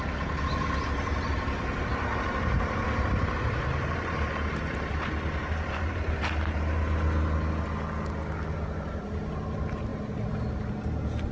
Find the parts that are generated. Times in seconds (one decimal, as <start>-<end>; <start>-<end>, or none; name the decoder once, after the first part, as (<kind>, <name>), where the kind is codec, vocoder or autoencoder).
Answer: 1.9-6.7 (vocoder, BigVGAN v2)